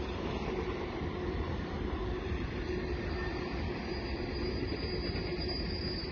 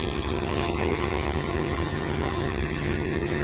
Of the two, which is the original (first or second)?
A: first